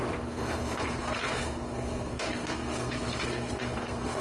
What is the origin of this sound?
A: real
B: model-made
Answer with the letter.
B